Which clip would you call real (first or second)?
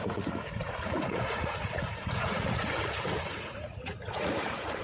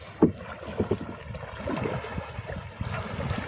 second